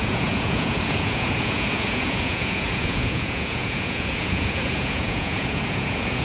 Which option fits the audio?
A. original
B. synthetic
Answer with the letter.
B